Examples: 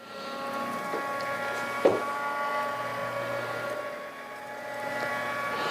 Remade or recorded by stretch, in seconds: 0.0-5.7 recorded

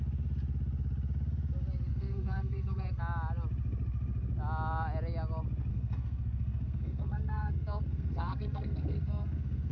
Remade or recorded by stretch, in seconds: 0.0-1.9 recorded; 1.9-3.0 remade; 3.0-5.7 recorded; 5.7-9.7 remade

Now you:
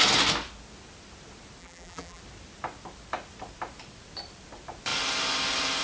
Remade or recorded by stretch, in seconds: 0.0-1.6 recorded; 1.6-2.2 remade; 2.2-5.8 recorded